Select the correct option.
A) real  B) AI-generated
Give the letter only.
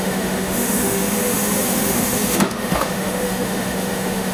B